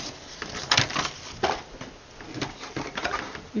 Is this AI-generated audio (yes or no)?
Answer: no